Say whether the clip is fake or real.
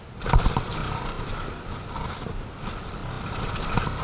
real